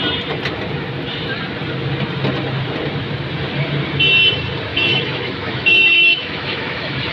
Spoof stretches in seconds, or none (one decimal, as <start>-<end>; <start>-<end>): 4.7-7.1